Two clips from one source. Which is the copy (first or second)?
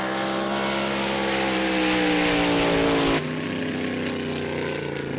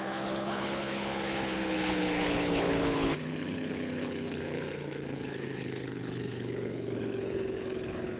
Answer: second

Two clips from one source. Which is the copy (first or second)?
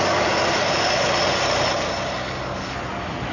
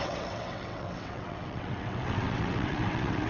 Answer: second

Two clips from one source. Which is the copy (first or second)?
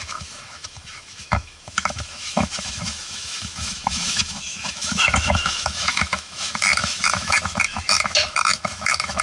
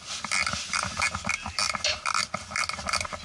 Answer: first